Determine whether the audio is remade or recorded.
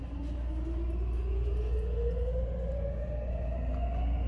recorded